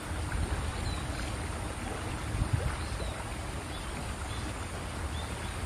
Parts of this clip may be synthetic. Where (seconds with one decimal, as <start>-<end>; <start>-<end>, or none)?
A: none